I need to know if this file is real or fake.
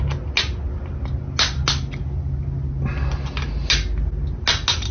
real